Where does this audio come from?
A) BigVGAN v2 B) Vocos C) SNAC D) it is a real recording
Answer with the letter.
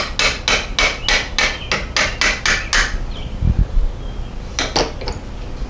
D